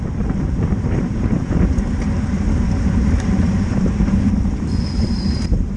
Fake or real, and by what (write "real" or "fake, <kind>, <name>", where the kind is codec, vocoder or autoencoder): fake, vocoder, BigVGAN v2